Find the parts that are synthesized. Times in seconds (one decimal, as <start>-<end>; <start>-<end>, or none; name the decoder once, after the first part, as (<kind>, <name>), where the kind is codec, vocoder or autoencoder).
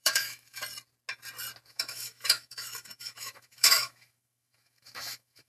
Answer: 0.0-0.6 (autoencoder, DAC-VAE); 1.7-5.5